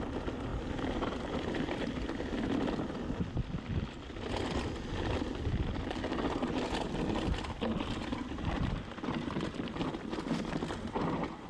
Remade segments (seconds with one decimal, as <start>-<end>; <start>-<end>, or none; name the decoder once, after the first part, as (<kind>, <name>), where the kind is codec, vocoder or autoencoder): 8.1-9.5 (vocoder, BigVGAN v2)